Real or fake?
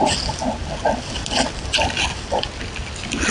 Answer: real